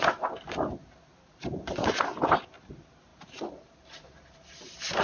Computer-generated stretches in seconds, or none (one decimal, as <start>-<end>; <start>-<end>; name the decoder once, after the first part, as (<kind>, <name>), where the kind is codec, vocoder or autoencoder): none